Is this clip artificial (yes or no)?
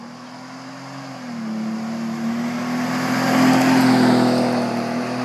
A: no